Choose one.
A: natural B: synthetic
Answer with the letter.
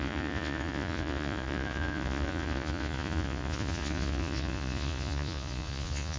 B